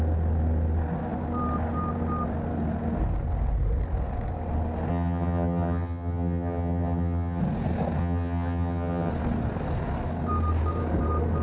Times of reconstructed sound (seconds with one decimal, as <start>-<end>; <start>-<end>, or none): 4.9-7.4; 8.0-9.1